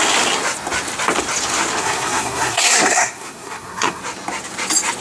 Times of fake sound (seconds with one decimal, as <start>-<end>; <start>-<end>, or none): 1.8-4.0